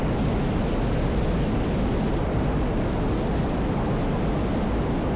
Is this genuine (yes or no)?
yes